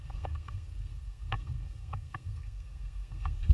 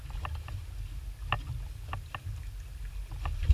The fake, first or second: first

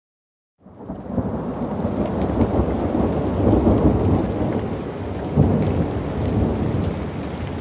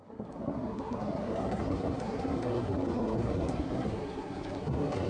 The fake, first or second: second